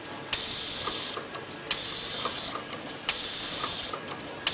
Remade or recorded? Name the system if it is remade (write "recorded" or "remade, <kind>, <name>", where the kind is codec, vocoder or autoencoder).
recorded